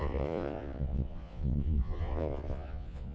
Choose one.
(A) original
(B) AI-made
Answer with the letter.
B